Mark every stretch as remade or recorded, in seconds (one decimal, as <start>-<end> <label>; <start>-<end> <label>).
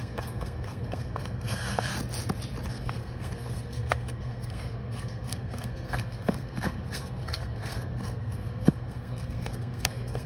0.0-1.9 remade; 1.9-2.7 recorded; 2.7-10.3 remade